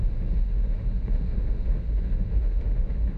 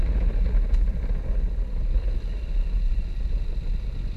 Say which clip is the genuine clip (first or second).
second